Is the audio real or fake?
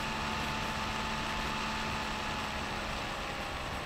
real